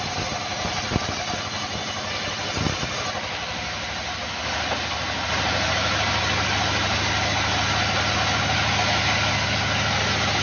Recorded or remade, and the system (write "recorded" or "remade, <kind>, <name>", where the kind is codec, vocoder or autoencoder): recorded